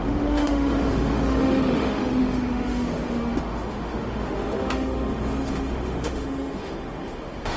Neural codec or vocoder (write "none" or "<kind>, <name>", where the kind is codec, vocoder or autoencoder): autoencoder, DAC-VAE